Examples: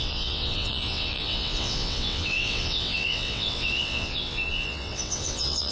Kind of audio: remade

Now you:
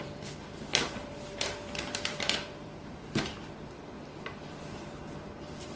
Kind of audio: remade